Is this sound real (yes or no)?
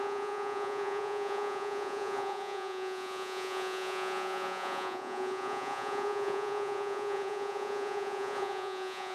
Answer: no